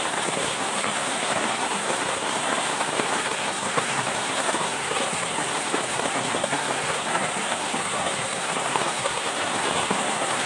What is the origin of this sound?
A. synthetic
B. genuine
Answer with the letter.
A